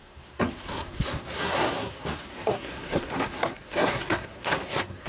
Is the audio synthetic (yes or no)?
yes